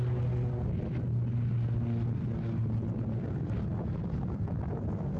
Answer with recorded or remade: recorded